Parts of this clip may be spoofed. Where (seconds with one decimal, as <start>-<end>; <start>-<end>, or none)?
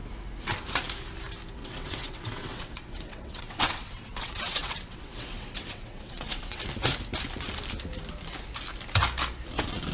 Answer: 1.6-6.6